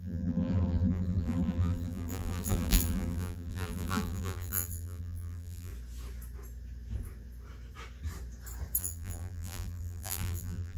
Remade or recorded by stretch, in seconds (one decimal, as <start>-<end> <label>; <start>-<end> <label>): 0.0-5.7 remade; 5.7-8.8 recorded; 8.8-10.8 remade